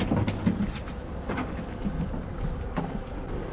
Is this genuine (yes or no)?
yes